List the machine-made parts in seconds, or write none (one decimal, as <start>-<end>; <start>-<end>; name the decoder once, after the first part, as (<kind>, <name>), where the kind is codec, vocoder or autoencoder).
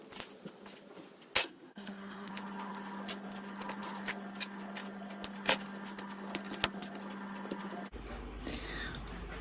1.4-2.3 (codec, SNAC)